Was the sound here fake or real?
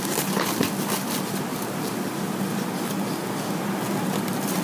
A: real